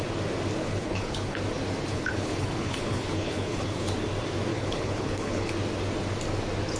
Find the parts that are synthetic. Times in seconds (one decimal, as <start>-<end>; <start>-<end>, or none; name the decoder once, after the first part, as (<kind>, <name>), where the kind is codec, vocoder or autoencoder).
0.6-1.4 (codec, HILCodec); 1.9-3.9; 4.5-5.5